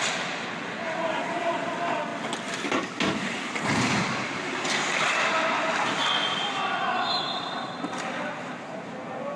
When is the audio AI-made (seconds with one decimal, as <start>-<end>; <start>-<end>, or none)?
none